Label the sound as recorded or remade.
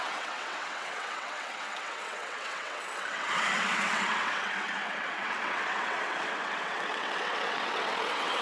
remade